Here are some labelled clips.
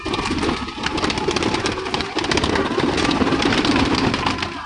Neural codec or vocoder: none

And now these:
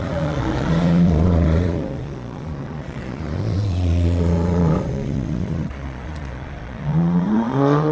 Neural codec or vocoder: vocoder, Vocos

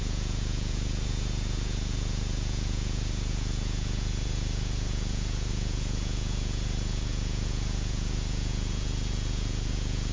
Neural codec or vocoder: vocoder, Vocos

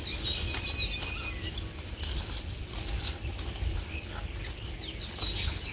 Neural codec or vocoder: none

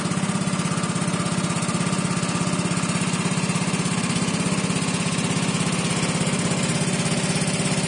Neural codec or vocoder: none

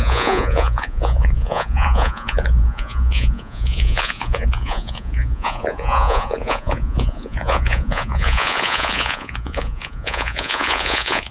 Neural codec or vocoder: vocoder, Vocos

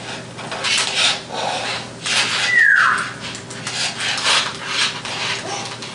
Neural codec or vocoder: none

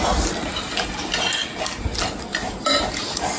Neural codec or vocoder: none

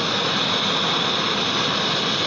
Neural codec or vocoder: none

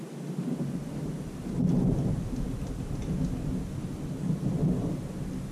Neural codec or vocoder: none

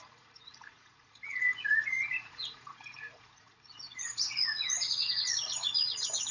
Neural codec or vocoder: vocoder, Vocos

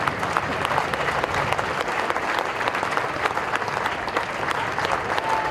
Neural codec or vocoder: none